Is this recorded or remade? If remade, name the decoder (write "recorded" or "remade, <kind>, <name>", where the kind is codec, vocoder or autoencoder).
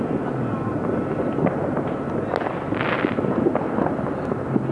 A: remade, vocoder, BigVGAN v2